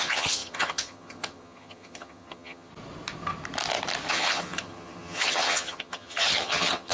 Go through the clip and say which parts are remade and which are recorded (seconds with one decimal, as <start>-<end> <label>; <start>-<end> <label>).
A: 0.0-2.7 remade; 2.7-4.1 recorded; 4.1-6.9 remade

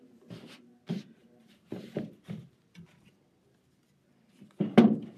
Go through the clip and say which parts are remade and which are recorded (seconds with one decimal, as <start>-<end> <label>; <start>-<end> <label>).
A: 0.0-1.2 recorded; 1.2-4.3 remade; 4.3-5.2 recorded

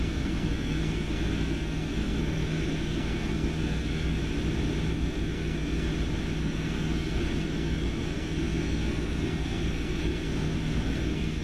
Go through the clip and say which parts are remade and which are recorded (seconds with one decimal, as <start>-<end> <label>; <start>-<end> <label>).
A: 0.0-4.2 remade; 4.2-4.9 recorded; 4.9-5.9 remade; 5.9-6.4 recorded; 6.4-11.4 remade

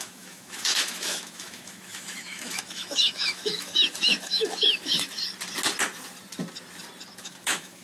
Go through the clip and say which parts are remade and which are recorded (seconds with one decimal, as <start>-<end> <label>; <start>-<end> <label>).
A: 0.0-5.2 remade; 5.2-7.2 recorded; 7.2-7.8 remade

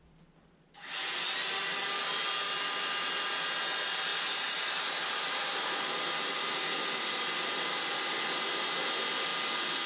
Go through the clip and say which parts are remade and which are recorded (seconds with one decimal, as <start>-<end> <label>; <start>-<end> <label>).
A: 0.0-4.1 recorded; 4.1-8.2 remade; 8.2-9.9 recorded

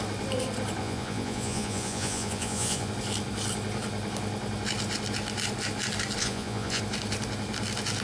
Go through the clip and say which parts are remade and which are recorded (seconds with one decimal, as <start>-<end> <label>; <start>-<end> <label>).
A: 0.0-0.8 recorded; 0.8-2.9 remade; 2.9-6.2 recorded; 6.2-6.8 remade; 6.8-8.0 recorded

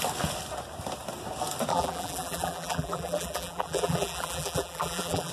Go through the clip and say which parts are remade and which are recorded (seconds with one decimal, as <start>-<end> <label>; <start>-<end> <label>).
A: 0.0-1.7 recorded; 1.7-5.3 remade